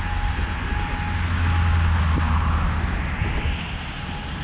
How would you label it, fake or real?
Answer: real